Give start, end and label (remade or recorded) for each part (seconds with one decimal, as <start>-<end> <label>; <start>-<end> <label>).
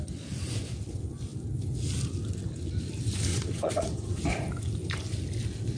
0.0-3.3 recorded; 3.3-4.2 remade; 4.2-5.8 recorded